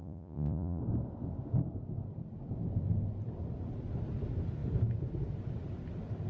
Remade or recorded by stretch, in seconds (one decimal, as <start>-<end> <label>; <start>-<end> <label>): 0.0-0.8 remade; 0.8-6.3 recorded